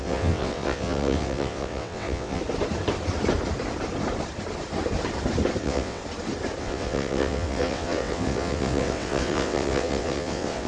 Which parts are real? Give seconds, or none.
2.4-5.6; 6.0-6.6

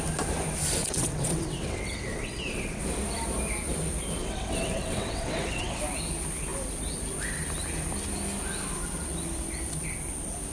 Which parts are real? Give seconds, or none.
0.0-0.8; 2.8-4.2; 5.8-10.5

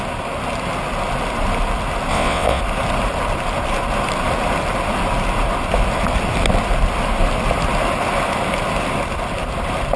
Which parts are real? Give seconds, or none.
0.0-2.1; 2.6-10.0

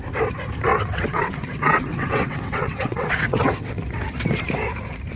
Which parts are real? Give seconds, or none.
0.0-0.7; 3.8-5.2

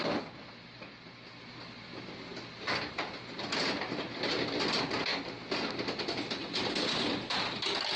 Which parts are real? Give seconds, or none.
0.0-8.0

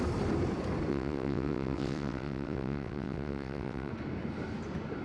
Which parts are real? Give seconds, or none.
0.0-0.9; 3.9-5.0

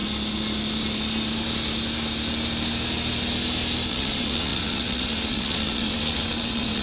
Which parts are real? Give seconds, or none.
0.0-3.9

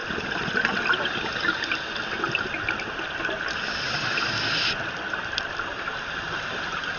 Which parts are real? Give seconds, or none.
0.0-7.0